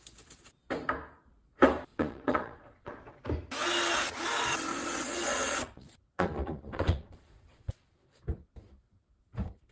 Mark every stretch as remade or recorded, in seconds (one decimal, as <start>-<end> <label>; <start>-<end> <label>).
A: 0.0-1.9 recorded; 1.9-3.2 remade; 3.2-4.7 recorded; 4.7-8.2 remade; 8.2-9.7 recorded

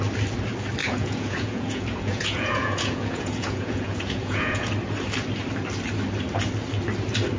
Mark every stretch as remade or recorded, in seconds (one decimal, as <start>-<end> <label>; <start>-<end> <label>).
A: 0.0-0.8 recorded; 0.8-4.7 remade; 4.7-7.4 recorded